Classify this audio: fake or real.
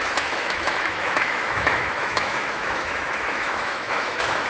fake